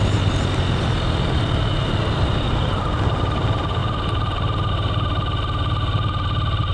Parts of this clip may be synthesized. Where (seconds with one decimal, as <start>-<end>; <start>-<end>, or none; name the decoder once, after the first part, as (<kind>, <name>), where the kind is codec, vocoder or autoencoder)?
none